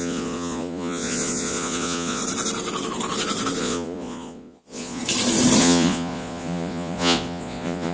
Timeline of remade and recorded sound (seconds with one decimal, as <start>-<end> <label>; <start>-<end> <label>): 0.0-2.2 remade; 2.2-3.6 recorded; 3.6-5.0 remade; 5.0-5.6 recorded; 5.6-7.9 remade